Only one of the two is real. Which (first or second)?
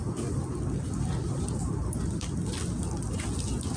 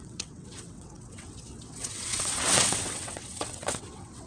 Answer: first